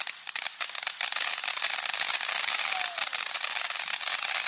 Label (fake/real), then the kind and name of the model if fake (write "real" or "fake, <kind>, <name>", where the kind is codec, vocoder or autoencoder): real